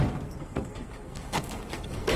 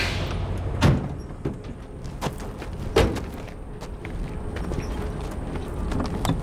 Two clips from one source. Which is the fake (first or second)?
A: first